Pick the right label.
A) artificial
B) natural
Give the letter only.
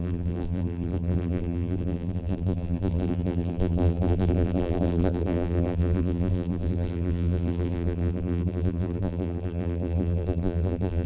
A